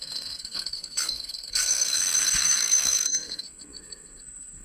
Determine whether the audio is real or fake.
fake